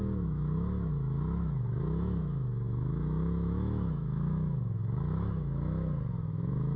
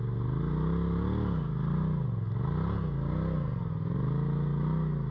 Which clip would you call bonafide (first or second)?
second